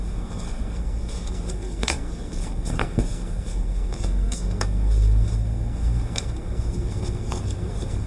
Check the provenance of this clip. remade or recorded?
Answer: remade